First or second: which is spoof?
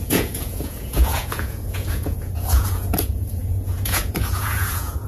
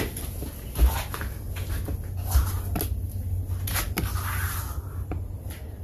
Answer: first